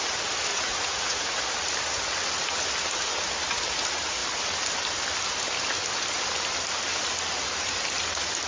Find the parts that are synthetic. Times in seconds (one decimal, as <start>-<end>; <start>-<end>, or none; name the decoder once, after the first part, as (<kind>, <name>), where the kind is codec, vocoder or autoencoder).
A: 0.5-1.4 (vocoder, Vocos)

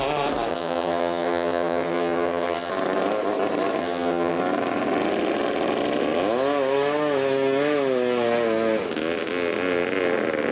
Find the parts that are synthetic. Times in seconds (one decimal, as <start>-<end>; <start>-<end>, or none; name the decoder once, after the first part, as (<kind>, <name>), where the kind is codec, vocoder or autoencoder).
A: 0.5-2.7 (vocoder, HiFi-GAN); 3.8-4.4

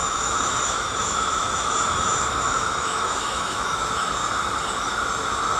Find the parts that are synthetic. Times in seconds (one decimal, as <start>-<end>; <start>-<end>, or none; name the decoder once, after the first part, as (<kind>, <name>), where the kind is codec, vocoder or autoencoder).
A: 0.0-4.2 (autoencoder, DAC-VAE)

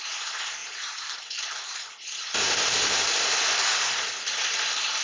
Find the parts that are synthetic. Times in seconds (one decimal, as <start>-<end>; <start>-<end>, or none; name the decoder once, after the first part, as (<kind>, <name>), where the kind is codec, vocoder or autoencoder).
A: 0.6-3.0 (vocoder, BigVGAN v2)

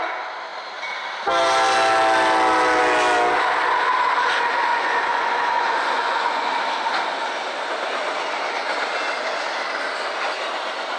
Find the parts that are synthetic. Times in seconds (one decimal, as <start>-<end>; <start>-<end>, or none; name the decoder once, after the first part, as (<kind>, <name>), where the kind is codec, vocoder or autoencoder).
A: 4.7-6.5 (vocoder, Vocos)

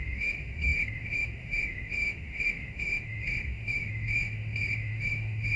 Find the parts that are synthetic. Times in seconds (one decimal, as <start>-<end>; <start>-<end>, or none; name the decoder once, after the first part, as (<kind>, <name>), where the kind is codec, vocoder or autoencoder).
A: 0.0-5.6 (autoencoder, DAC-VAE)

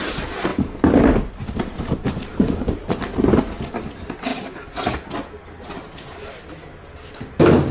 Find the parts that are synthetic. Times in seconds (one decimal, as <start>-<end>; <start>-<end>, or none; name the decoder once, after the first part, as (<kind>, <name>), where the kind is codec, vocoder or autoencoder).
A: 2.3-2.8 (codec, DAC)

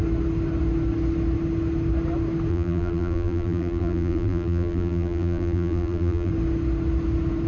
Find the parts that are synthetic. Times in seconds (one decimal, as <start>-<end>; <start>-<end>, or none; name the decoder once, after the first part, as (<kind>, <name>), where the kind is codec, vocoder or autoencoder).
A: 2.5-6.3 (vocoder, BigVGAN v2)